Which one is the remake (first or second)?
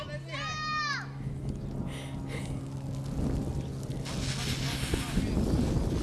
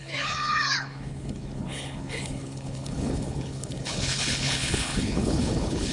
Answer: second